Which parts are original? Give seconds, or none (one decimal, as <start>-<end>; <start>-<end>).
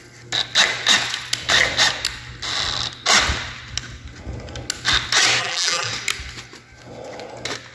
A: 0.0-5.4; 5.9-7.7